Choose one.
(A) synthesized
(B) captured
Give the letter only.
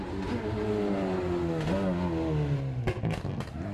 B